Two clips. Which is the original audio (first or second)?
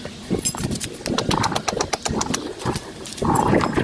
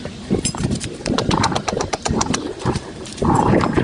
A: first